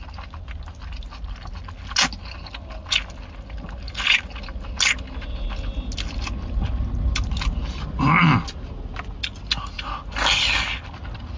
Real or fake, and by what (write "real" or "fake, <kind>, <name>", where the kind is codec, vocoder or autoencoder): real